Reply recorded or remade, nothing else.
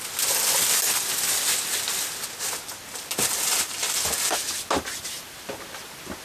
recorded